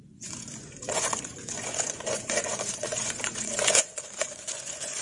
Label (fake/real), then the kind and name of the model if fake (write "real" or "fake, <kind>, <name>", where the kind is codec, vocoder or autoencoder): fake, vocoder, Vocos